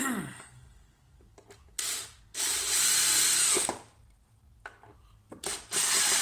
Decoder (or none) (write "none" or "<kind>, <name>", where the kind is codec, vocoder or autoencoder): none